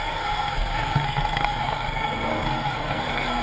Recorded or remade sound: remade